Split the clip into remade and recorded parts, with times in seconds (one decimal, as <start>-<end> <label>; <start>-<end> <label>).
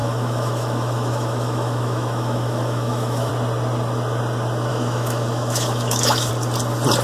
0.0-3.3 remade; 3.3-4.7 recorded; 4.7-6.3 remade; 6.3-7.0 recorded